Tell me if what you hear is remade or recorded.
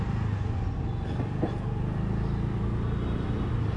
recorded